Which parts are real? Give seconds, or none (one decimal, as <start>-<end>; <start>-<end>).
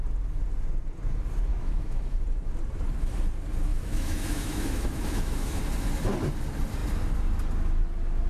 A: 0.0-1.5; 2.2-3.7; 5.6-8.3